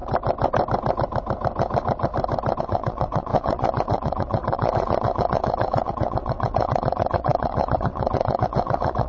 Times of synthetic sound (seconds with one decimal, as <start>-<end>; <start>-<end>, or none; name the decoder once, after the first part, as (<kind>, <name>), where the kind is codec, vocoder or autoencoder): 2.6-9.1 (vocoder, WaveNeXt)